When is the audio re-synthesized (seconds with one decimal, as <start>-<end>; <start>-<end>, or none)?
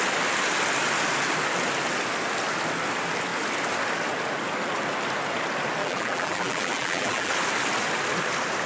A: 5.8-7.3